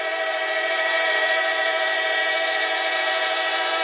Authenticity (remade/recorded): remade